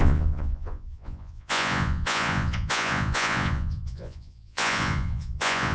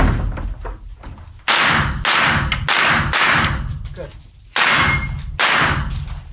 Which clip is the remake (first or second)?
first